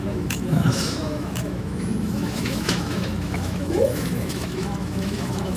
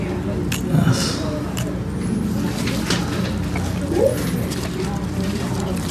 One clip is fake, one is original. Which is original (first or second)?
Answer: second